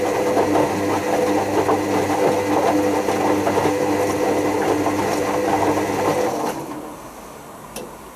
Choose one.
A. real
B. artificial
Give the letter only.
A